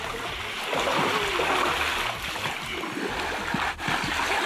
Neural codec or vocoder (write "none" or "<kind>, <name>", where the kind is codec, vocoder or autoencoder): none